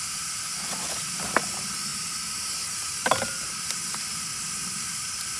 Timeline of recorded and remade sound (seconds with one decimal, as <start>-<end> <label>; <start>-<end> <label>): 0.0-0.5 recorded; 0.5-1.1 remade; 1.1-1.9 recorded; 1.9-5.4 remade